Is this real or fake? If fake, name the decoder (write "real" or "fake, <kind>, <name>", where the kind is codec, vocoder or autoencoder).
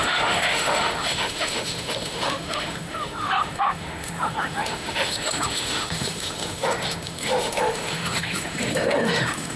fake, autoencoder, DAC-VAE